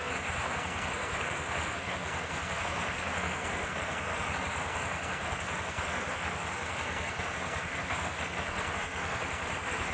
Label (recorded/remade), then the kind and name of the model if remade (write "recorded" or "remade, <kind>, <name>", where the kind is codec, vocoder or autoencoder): remade, codec, SNAC